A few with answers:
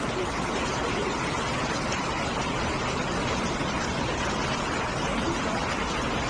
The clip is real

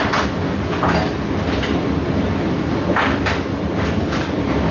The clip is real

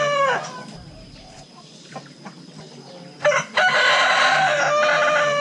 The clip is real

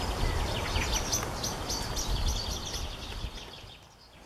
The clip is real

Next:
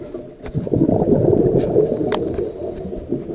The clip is real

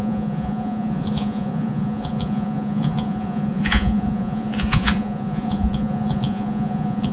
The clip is fake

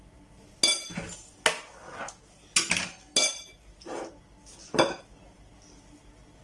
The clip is real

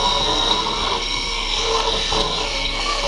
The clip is fake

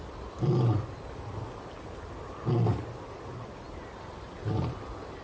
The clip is real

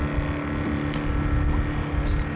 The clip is real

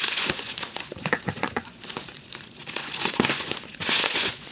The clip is fake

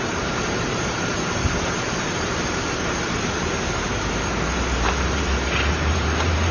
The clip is fake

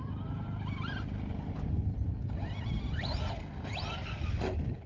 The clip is real